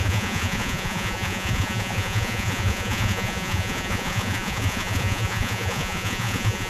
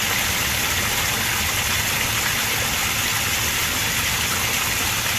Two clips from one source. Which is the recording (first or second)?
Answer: second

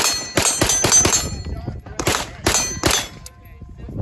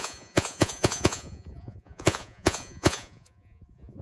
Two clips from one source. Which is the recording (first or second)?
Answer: first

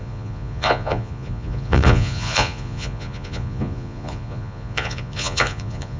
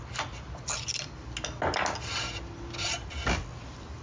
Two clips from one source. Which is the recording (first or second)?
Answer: second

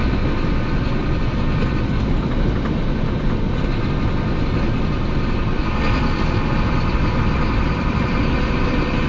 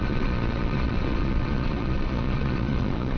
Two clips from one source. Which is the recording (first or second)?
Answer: first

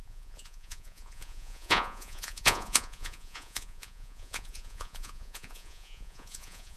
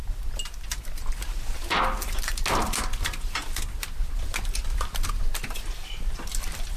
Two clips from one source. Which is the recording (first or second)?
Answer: second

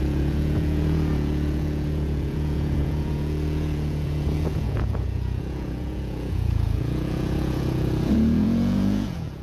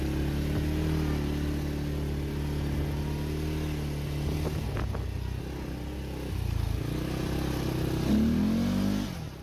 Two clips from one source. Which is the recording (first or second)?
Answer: second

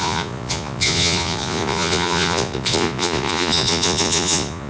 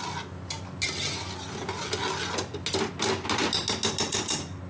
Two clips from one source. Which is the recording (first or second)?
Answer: second